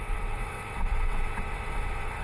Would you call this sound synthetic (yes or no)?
yes